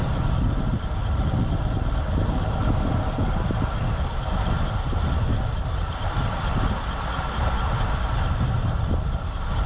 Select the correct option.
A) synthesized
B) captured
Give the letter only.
B